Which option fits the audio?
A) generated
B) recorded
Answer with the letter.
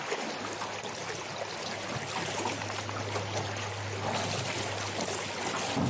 B